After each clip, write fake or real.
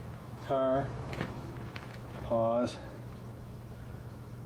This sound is fake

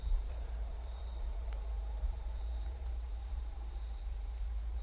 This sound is fake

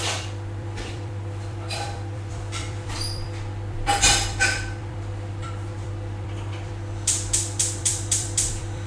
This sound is fake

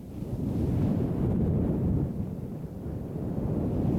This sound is real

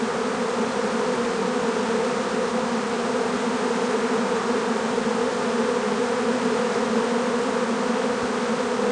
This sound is real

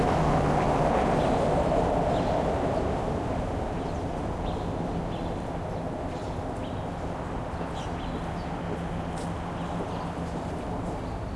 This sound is real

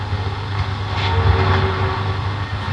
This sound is real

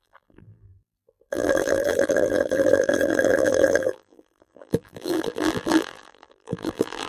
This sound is fake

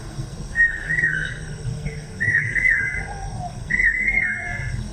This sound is fake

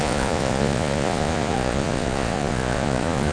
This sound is fake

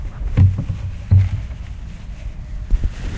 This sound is real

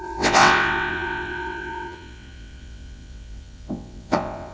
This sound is fake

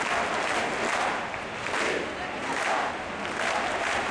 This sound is real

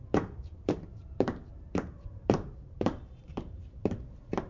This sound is fake